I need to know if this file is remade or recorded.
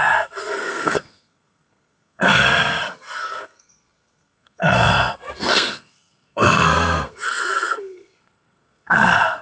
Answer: remade